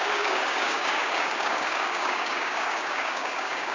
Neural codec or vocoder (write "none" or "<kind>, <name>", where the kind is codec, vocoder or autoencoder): codec, DAC